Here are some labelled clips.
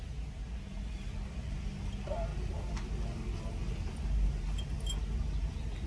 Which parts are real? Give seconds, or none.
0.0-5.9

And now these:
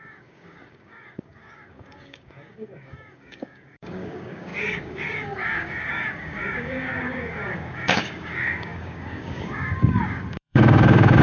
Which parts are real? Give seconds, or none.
none